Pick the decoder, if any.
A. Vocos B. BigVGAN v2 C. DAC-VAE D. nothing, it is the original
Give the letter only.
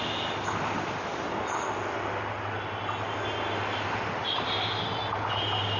D